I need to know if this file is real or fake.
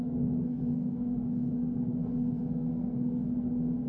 fake